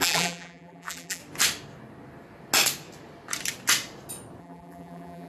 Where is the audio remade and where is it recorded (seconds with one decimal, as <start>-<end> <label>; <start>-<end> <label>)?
0.0-1.2 remade; 1.2-4.4 recorded; 4.4-5.3 remade